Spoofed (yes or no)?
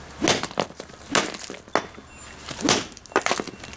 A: no